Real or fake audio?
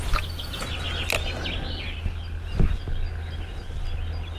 real